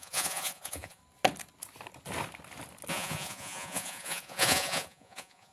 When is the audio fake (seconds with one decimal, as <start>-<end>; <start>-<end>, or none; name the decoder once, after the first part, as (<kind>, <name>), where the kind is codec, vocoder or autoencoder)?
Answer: 0.0-1.0 (vocoder, Vocos); 2.9-5.5